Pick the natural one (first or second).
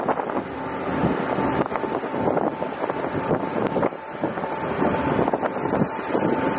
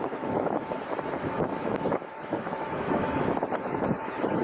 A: first